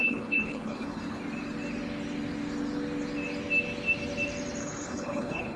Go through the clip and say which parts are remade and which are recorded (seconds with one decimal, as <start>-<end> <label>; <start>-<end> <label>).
0.0-1.2 remade; 1.2-4.6 recorded; 4.6-5.6 remade